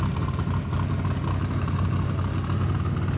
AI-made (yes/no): no